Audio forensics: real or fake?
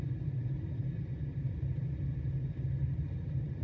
real